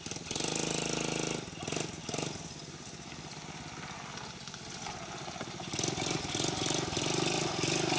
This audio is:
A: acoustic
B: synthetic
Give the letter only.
A